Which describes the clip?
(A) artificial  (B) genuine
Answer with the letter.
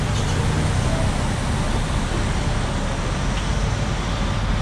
B